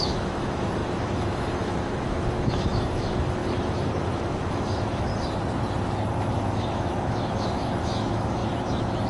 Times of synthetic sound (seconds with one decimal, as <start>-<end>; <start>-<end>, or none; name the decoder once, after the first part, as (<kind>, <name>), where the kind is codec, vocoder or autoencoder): 0.0-5.1 (autoencoder, DAC-VAE); 6.1-9.1